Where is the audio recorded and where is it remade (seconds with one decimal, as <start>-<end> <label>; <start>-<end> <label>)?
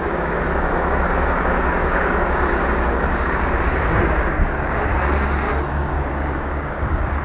0.0-4.9 remade; 4.9-5.7 recorded; 5.7-7.2 remade